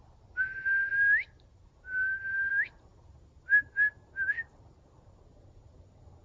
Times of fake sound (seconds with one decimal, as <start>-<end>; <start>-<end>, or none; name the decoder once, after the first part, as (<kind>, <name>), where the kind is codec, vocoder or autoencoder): none